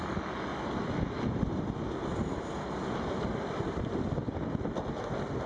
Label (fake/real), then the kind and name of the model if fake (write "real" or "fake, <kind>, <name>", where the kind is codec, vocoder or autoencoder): real